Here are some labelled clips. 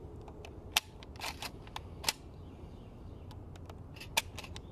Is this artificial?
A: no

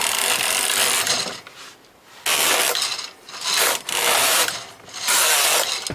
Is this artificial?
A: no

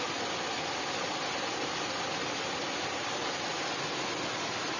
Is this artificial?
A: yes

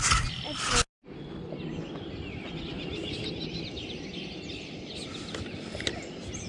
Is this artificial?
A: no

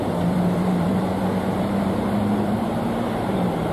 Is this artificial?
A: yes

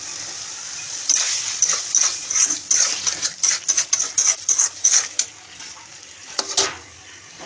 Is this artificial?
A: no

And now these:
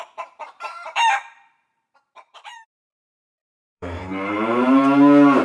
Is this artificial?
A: yes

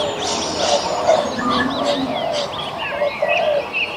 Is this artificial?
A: no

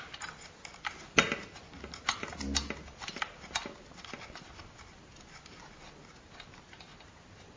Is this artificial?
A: no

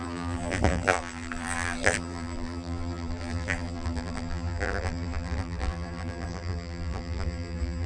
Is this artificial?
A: yes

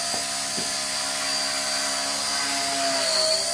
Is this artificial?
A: no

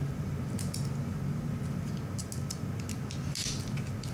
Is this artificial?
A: no